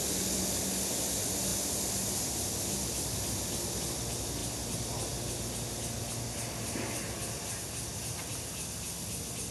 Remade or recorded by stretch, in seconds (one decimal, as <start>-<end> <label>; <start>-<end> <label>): 0.0-1.5 recorded; 1.5-2.8 remade; 2.8-9.5 recorded